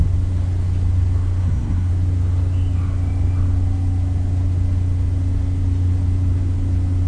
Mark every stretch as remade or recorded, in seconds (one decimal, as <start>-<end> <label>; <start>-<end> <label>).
0.0-1.4 recorded; 1.4-1.9 remade; 1.9-7.1 recorded